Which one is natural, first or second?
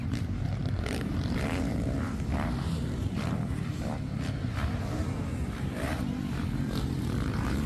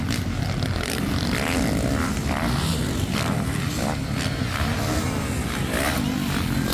second